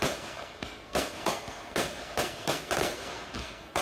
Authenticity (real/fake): fake